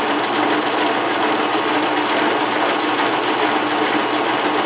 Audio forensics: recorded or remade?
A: recorded